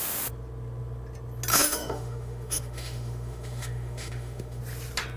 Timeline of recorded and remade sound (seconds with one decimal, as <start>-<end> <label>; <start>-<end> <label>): 0.0-1.5 recorded; 1.5-4.6 remade; 4.6-5.2 recorded